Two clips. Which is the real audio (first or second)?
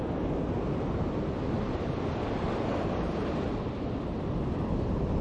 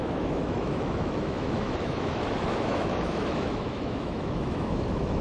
first